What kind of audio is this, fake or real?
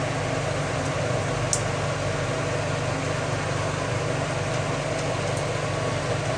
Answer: real